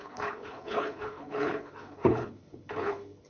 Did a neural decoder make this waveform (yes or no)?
yes